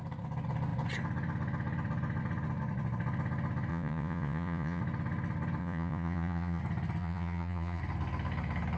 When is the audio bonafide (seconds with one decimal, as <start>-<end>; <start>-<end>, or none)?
0.0-3.7; 4.8-5.6; 6.6-7.0; 7.8-8.8